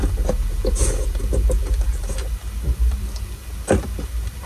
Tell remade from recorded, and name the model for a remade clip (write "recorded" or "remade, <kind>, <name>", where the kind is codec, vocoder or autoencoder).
recorded